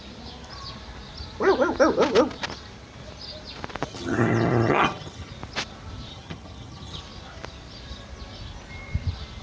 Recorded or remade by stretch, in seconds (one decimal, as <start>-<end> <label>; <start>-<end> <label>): 0.0-3.9 recorded; 3.9-5.3 remade; 5.3-6.1 recorded; 6.1-7.0 remade; 7.0-9.4 recorded